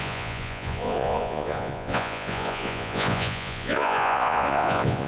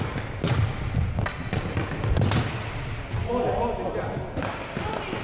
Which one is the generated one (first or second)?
first